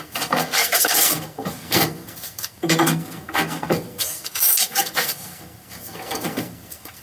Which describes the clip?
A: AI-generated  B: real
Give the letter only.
A